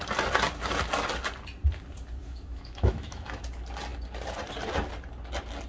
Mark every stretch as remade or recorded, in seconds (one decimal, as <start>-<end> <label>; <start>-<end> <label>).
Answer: 0.0-2.2 recorded; 2.2-3.4 remade; 3.4-5.7 recorded